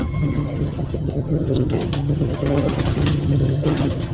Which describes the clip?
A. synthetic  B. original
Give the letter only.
A